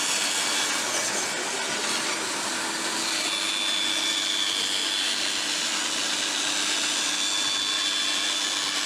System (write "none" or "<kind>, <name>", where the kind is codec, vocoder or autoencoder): none